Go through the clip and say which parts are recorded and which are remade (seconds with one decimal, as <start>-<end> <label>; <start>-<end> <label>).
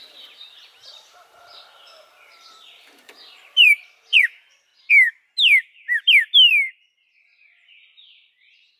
0.0-4.7 remade; 4.7-7.7 recorded; 7.7-8.8 remade